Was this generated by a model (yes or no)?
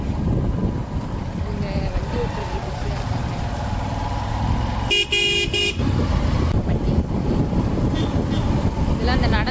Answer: no